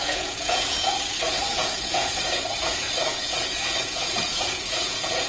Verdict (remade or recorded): remade